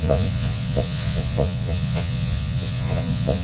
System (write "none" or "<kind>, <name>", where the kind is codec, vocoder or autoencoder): vocoder, Vocos